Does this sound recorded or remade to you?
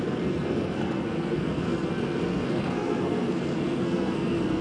remade